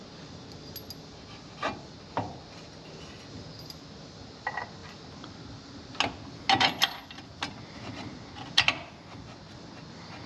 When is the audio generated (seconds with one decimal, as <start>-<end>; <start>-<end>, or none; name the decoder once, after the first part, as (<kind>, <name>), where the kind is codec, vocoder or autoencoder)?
none